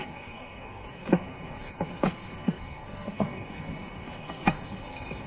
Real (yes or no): no